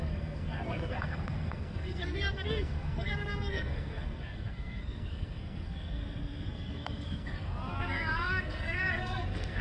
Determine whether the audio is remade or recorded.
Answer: remade